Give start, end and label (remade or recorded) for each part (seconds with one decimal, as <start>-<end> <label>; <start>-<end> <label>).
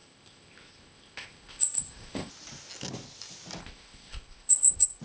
0.0-2.3 remade; 2.3-3.6 recorded; 3.6-5.0 remade